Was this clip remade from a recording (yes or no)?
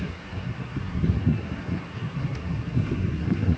yes